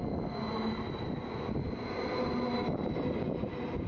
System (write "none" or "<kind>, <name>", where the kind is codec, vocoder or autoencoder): none